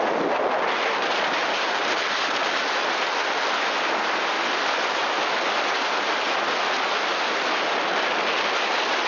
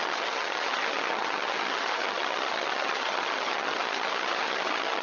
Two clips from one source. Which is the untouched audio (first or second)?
first